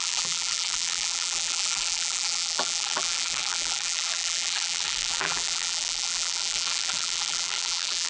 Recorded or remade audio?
remade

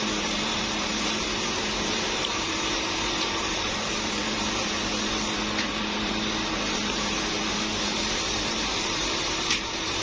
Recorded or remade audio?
remade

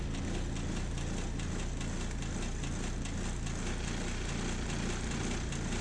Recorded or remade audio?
recorded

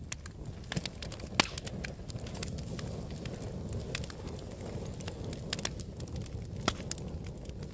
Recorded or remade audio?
recorded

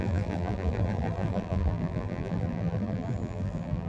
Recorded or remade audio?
remade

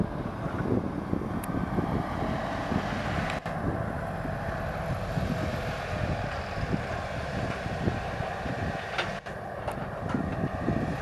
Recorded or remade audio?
recorded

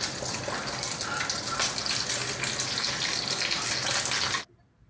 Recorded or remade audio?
recorded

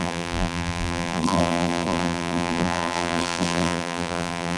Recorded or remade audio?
remade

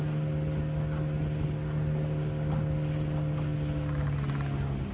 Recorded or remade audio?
recorded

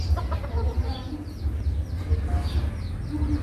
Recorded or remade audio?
recorded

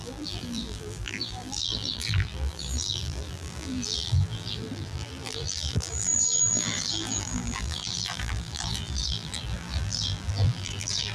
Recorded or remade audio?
remade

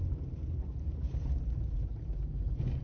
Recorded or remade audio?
remade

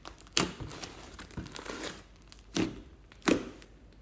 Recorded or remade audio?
recorded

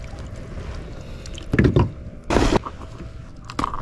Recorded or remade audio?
recorded